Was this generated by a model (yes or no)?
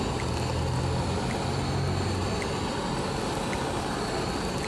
no